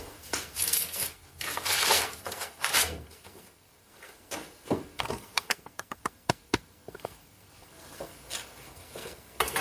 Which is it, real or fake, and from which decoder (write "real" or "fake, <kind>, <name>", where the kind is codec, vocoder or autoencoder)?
fake, codec, SNAC